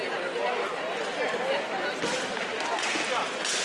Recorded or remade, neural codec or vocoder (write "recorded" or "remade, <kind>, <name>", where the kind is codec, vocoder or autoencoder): recorded